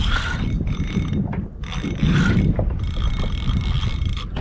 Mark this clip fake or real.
real